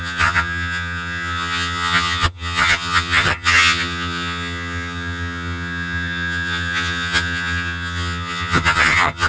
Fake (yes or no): yes